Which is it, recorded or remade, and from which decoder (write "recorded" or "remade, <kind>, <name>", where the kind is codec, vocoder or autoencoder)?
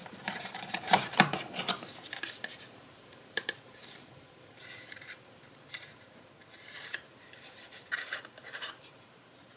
remade, vocoder, BigVGAN v2